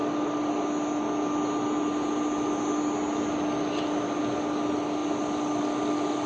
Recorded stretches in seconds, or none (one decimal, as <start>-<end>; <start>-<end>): 0.0-6.3

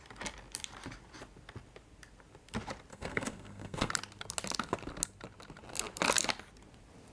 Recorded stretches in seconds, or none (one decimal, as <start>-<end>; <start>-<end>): 0.0-2.9; 3.9-7.1

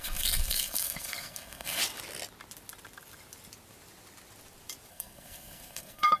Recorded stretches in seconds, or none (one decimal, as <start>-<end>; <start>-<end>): 1.8-4.9

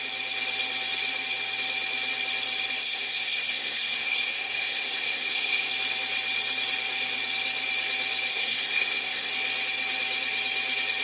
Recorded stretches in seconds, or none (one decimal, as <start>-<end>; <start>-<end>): 0.0-2.8; 5.7-8.3; 9.3-11.0

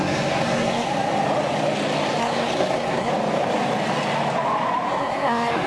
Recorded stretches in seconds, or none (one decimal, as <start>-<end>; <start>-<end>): 0.9-2.2; 3.1-4.9

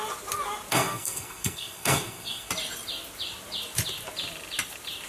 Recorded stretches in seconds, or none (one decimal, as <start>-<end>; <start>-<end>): 0.0-0.7; 2.5-5.1

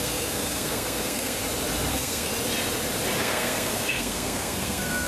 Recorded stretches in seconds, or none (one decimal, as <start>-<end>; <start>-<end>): 1.4-1.9; 2.3-3.2